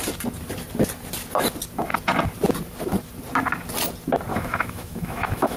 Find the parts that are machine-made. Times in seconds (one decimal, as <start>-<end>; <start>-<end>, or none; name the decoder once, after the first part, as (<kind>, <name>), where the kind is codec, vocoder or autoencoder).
4.3-5.6 (autoencoder, DAC-VAE)